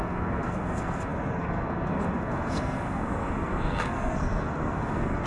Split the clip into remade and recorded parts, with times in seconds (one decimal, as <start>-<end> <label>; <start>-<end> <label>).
0.0-5.3 remade